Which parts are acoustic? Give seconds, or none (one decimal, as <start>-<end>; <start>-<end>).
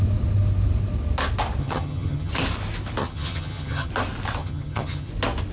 0.0-1.6; 2.3-3.0; 3.9-4.4; 5.1-5.5